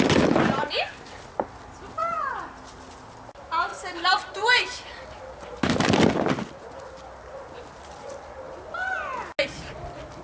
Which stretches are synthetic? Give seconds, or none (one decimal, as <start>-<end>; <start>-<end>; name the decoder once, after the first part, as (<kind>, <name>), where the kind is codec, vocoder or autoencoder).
none